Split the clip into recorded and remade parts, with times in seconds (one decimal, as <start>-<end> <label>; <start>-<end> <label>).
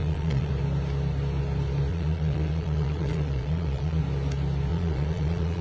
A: 0.0-0.5 remade; 0.5-1.9 recorded; 1.9-4.0 remade; 4.0-4.7 recorded; 4.7-5.6 remade